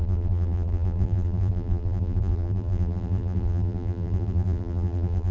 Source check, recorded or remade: remade